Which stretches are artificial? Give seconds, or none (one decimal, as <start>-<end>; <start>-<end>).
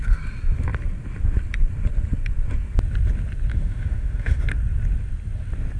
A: 3.5-4.4